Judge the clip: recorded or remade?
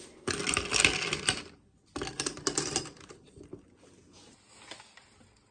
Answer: recorded